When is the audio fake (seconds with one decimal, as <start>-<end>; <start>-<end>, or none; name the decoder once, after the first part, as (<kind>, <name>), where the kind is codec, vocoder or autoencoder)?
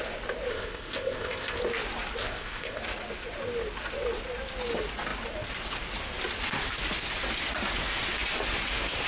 0.5-1.6 (codec, ZipCodec); 2.2-2.8